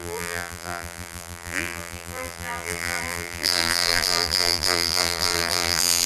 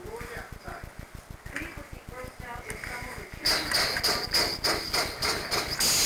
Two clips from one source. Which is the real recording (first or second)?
second